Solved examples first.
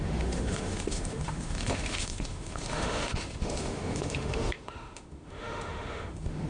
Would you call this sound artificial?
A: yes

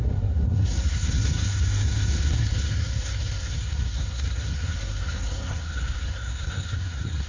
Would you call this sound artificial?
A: yes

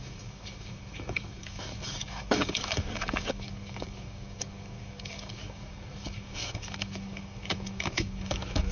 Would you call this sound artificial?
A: yes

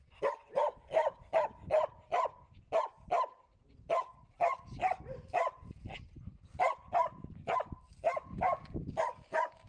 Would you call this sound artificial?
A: no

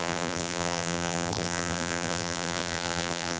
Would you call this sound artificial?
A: yes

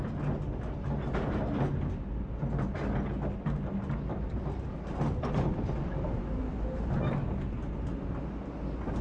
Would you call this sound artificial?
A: no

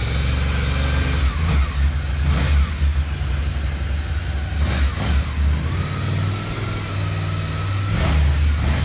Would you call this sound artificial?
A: no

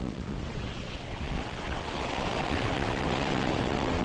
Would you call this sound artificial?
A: yes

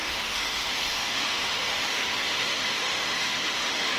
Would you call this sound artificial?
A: yes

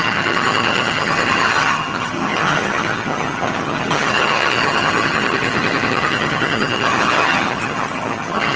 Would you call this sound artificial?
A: yes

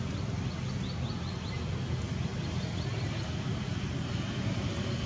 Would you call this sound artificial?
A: no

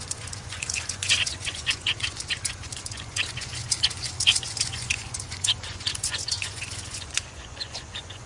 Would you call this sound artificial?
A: yes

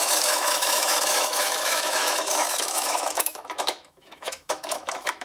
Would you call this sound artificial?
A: yes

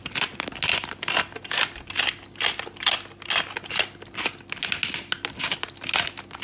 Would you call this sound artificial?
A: no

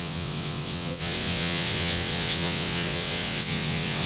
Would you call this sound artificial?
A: yes